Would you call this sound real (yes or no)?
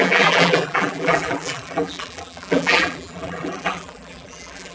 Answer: no